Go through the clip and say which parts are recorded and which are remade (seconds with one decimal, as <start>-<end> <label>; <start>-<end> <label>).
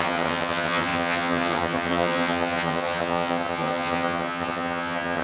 0.0-5.2 remade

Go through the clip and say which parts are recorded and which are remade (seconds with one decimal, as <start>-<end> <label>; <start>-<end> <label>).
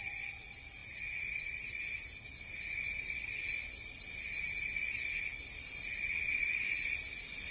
0.0-7.5 recorded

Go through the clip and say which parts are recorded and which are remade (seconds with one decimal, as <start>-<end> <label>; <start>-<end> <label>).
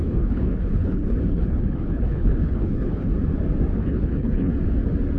0.0-3.1 remade; 3.1-3.8 recorded; 3.8-4.5 remade; 4.5-5.2 recorded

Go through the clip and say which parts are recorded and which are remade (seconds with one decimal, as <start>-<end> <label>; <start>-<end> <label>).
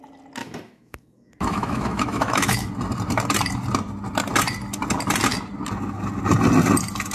0.0-0.4 recorded; 0.4-2.7 remade; 2.7-7.1 recorded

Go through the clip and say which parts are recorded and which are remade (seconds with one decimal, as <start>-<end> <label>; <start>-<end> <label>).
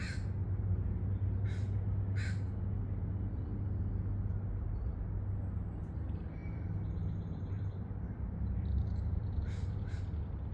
0.0-6.4 recorded; 6.4-10.0 remade; 10.0-10.5 recorded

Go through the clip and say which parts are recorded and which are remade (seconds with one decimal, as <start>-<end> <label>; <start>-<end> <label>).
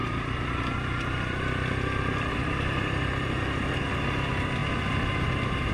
0.0-3.4 remade; 3.4-5.7 recorded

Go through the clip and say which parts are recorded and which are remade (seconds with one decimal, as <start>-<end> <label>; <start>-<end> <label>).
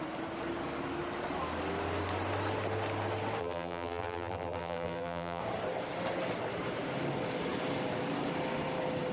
0.0-3.4 recorded; 3.4-5.4 remade; 5.4-9.1 recorded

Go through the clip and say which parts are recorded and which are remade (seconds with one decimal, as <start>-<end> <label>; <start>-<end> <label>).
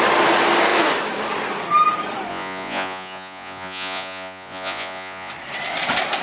0.0-2.3 recorded; 2.3-5.3 remade; 5.3-6.2 recorded